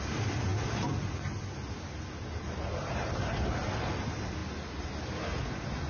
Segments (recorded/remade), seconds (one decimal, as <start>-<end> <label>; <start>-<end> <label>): 0.0-5.9 recorded

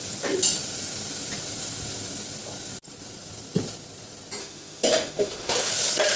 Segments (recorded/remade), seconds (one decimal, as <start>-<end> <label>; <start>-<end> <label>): 0.0-4.4 recorded; 4.4-5.7 remade; 5.7-6.2 recorded

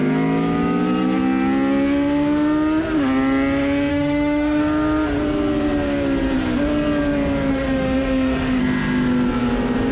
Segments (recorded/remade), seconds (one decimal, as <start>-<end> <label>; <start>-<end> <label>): 0.0-3.9 recorded; 3.9-4.6 remade; 4.6-7.5 recorded; 7.5-8.6 remade; 8.6-9.9 recorded

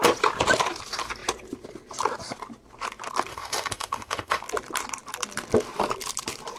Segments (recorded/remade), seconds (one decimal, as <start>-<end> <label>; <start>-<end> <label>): 0.0-3.3 recorded; 3.3-4.4 remade; 4.4-6.6 recorded

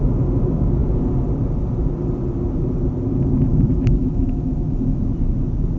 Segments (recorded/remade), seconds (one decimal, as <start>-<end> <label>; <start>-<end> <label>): 0.0-3.5 recorded; 3.5-5.1 remade; 5.1-5.8 recorded

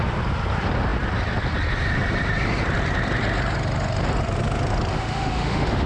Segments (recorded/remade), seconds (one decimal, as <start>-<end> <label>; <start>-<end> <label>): 0.0-4.9 recorded; 4.9-5.9 remade